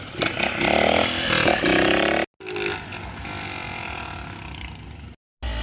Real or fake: real